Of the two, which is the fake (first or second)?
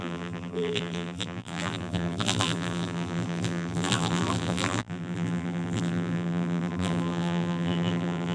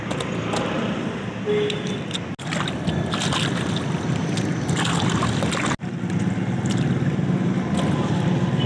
first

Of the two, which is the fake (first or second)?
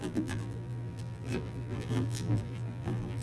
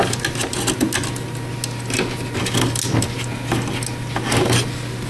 first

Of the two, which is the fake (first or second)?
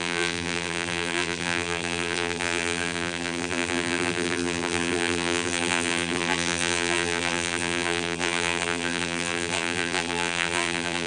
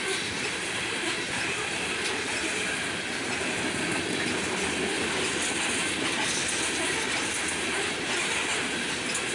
first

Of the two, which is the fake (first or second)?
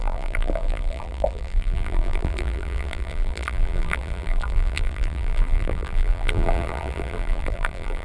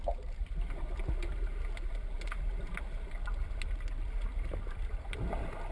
first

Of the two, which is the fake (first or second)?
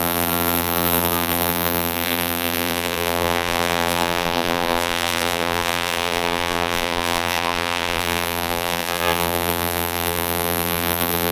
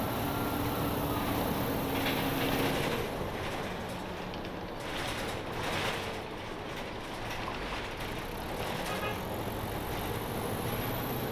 first